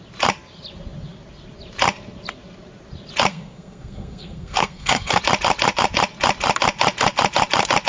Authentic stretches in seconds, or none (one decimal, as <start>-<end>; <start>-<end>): 0.0-3.3; 5.2-7.9